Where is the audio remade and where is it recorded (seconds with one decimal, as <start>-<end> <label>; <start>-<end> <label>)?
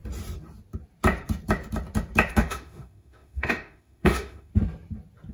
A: 0.0-2.3 recorded; 2.3-4.5 remade; 4.5-5.3 recorded